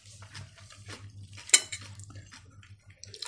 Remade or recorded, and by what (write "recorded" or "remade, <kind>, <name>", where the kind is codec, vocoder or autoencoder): recorded